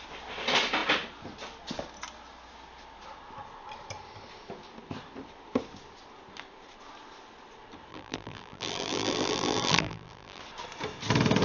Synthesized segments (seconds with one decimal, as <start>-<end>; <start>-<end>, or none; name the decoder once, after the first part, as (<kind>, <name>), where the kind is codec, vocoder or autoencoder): 7.9-10.4 (vocoder, BigVGAN v2)